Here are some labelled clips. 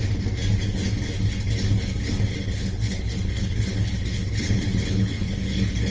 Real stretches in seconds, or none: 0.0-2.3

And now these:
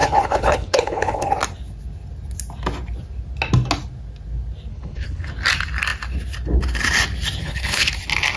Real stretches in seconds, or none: 1.3-4.7; 5.3-7.4; 7.9-8.4

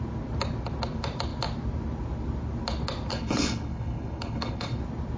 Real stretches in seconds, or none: 0.0-3.1; 4.8-5.2

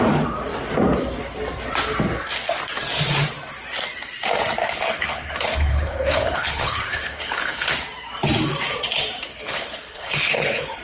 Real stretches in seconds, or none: 0.0-4.6; 7.7-9.3

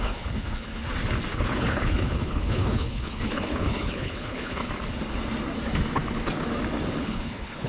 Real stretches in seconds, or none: 0.8-1.3; 4.6-7.0

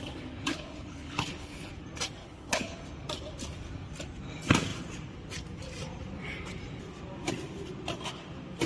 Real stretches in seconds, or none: 0.0-0.5; 1.7-2.2; 2.8-8.7

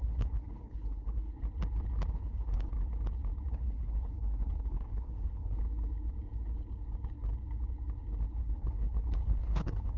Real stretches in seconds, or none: 1.3-2.1; 2.7-3.5; 5.6-8.4